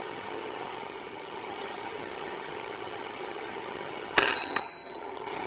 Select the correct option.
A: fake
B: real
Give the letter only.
A